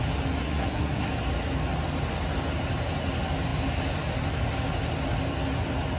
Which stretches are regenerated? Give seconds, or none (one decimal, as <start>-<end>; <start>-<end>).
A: 0.4-1.1